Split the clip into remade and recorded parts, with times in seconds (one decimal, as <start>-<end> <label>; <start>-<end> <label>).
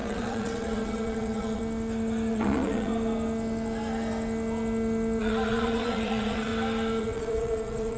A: 0.0-1.6 remade; 1.6-2.3 recorded; 2.3-2.9 remade; 2.9-5.2 recorded; 5.2-6.5 remade; 6.5-7.0 recorded; 7.0-8.0 remade